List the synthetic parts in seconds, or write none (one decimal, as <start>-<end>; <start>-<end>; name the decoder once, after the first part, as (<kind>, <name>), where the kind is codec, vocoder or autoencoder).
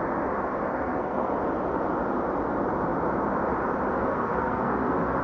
0.7-1.3 (codec, SNAC); 4.0-5.2